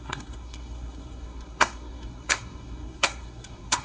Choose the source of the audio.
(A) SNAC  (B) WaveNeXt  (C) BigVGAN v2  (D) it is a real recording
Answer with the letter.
A